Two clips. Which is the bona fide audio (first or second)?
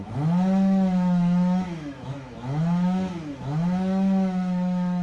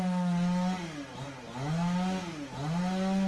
second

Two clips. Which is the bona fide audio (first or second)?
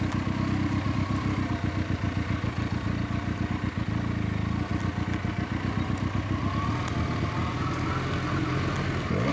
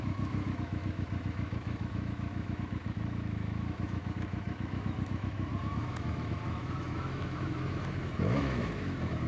first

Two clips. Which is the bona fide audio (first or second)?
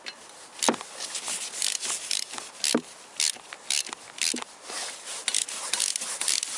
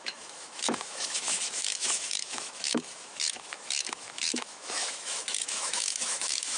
first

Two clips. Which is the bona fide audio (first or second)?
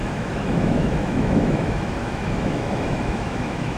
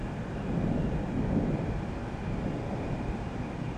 second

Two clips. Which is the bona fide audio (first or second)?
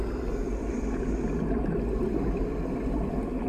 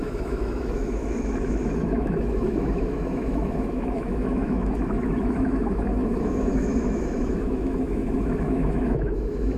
first